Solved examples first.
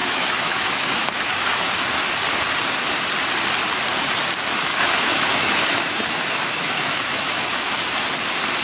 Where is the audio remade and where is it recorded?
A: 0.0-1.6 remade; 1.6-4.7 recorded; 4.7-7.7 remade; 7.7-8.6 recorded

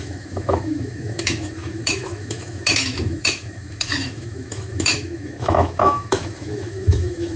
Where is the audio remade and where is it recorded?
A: 0.0-7.4 remade

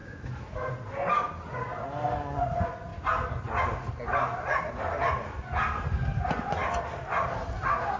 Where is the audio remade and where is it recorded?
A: 0.0-0.7 remade; 0.7-8.0 recorded

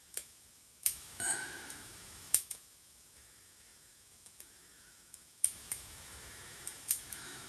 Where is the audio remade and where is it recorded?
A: 0.0-7.5 remade

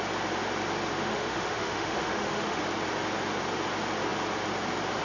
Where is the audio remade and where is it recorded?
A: 0.0-1.1 recorded; 1.1-2.6 remade; 2.6-5.0 recorded

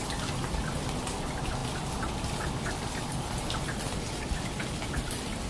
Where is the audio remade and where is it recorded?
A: 0.0-5.5 recorded